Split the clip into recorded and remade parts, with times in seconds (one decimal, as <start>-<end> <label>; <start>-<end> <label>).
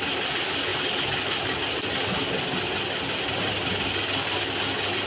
0.0-0.7 recorded; 0.7-1.6 remade; 1.6-5.1 recorded